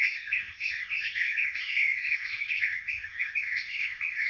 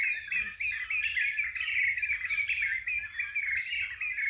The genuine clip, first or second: second